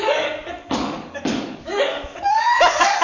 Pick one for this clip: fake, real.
fake